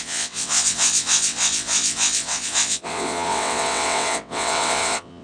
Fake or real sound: fake